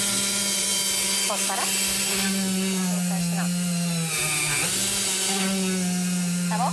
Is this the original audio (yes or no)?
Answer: yes